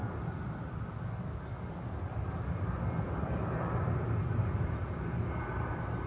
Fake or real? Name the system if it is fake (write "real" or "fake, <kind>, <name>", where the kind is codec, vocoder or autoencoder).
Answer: real